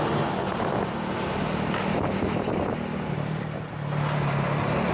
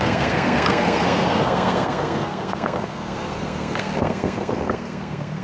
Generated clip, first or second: second